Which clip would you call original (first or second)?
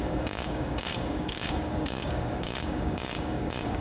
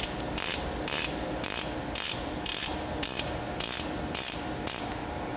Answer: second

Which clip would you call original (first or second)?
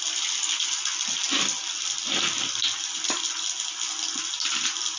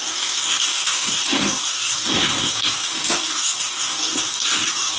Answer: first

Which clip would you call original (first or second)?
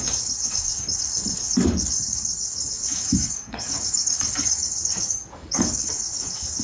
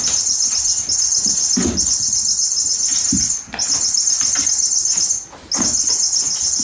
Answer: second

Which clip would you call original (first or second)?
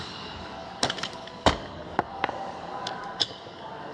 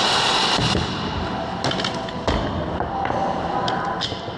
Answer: second